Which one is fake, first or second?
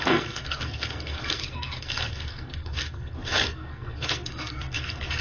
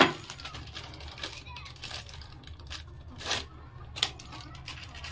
first